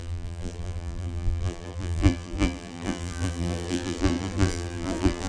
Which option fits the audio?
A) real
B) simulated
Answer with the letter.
B